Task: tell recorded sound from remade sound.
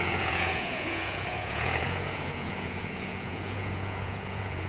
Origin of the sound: remade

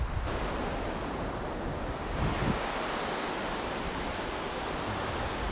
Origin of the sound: recorded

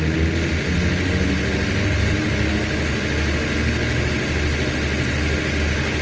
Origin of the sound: recorded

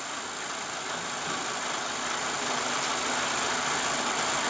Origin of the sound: recorded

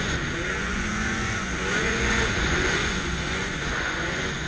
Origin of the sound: remade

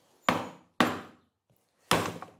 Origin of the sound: recorded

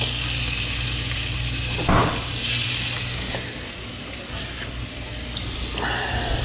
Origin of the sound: recorded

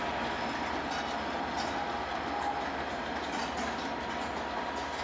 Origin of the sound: recorded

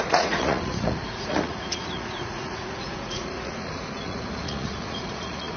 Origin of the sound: remade